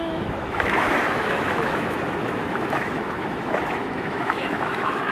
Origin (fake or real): fake